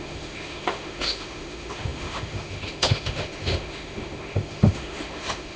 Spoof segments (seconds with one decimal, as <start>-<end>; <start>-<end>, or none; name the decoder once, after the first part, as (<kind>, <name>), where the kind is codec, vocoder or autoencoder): 0.0-5.6 (autoencoder, DAC-VAE)